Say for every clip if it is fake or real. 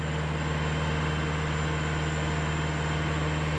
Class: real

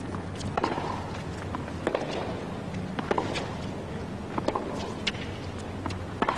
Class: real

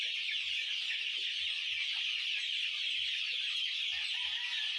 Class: real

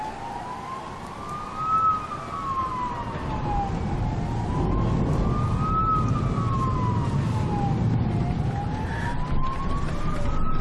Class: real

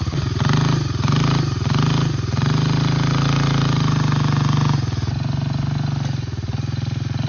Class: real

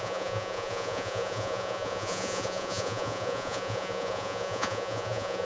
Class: fake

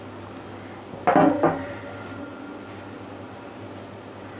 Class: real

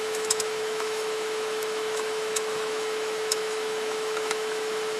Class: fake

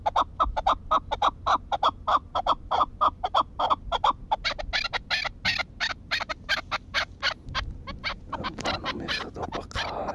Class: real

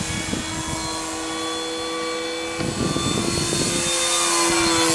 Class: real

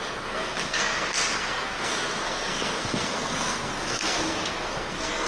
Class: fake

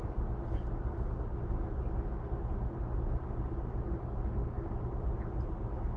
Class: real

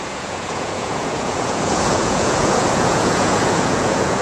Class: fake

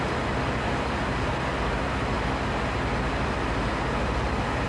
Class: real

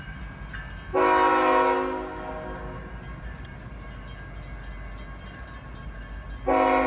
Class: real